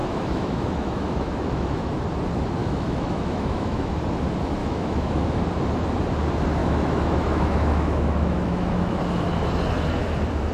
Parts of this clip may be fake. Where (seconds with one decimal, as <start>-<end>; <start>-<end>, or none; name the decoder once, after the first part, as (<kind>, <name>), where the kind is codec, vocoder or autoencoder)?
0.0-2.0 (autoencoder, DAC-VAE); 2.6-3.9; 4.6-5.4; 6.6-9.0